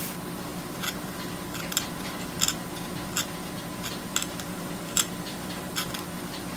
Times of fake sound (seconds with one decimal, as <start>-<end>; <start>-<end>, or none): 4.1-5.9